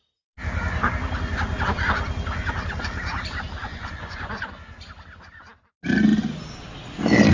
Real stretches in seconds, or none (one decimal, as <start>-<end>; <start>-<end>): 0.0-3.6; 4.5-7.3